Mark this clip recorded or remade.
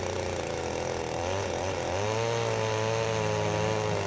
recorded